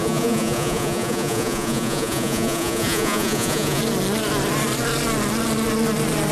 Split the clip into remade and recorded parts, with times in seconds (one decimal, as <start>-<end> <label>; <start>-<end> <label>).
0.0-3.8 remade; 3.8-6.3 recorded